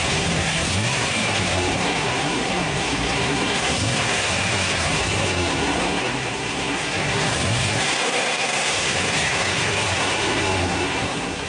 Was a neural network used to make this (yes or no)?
yes